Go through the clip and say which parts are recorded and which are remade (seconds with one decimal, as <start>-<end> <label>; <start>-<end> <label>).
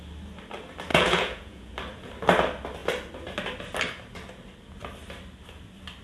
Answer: 0.0-0.9 recorded; 0.9-1.7 remade; 1.7-6.0 recorded